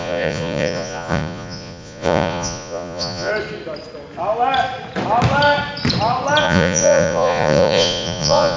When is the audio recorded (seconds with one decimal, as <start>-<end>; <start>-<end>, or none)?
3.3-6.4